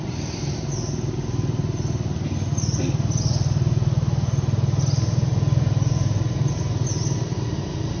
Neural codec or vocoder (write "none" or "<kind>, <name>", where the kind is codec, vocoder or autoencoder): none